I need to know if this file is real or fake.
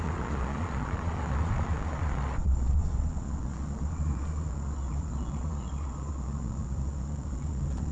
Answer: fake